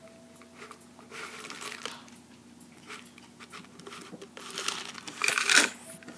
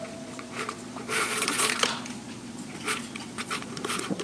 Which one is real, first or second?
first